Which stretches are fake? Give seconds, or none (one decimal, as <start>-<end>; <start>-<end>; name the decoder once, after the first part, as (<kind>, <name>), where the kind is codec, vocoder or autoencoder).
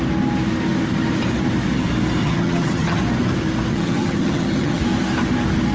2.2-3.0 (vocoder, HiFi-GAN); 3.7-4.8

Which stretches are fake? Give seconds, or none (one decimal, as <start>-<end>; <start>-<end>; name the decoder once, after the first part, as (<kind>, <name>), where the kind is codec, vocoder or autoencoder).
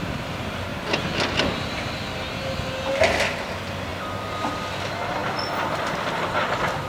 none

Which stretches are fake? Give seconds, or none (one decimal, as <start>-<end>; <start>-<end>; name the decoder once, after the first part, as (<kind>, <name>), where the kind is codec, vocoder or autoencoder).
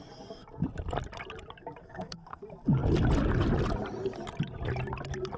1.8-2.4 (codec, SNAC)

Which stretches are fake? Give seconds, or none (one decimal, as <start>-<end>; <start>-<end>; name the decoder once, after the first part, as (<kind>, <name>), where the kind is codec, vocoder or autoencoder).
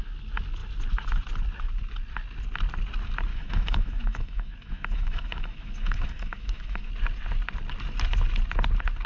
3.3-6.9 (autoencoder, DAC-VAE)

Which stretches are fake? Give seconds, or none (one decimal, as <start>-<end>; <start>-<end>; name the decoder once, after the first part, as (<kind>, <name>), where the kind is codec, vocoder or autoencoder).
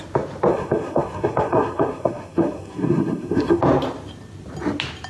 0.5-3.6 (codec, SNAC)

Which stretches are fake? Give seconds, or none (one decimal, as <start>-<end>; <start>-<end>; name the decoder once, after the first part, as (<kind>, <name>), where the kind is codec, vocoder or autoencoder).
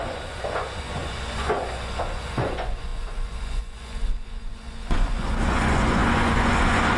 0.0-7.0 (vocoder, Vocos)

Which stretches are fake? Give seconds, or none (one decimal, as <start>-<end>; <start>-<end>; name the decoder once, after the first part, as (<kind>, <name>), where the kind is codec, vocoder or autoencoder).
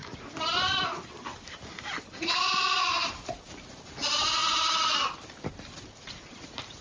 none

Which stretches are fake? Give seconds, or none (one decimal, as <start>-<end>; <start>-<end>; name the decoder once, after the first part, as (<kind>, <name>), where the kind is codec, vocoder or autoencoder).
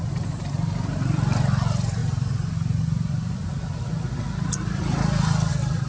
none